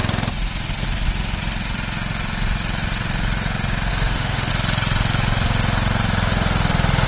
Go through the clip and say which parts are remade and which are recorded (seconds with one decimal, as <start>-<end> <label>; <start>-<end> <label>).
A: 0.0-3.9 recorded; 3.9-4.5 remade; 4.5-7.1 recorded